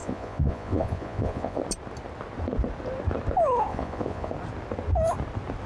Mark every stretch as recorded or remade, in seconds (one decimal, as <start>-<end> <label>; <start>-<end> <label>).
0.0-1.6 remade; 1.6-3.7 recorded; 3.7-4.3 remade; 4.3-5.7 recorded